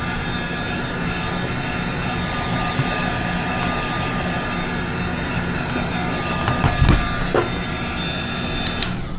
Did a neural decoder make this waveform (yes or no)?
no